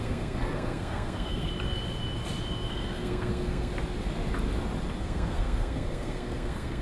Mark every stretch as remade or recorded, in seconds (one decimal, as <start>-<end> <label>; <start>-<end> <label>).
0.0-1.5 remade; 1.5-2.7 recorded; 2.7-3.7 remade; 3.7-5.0 recorded; 5.0-6.8 remade